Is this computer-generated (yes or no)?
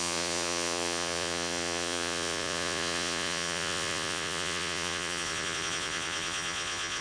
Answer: yes